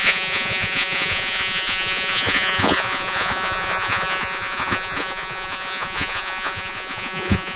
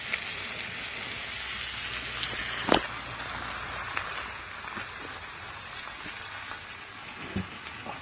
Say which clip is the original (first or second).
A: second